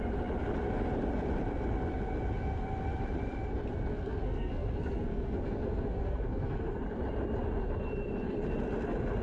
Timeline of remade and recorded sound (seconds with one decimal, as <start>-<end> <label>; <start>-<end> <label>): 0.0-3.9 recorded; 3.9-6.8 remade; 6.8-9.2 recorded